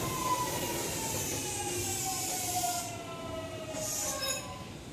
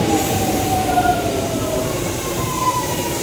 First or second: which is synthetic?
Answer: second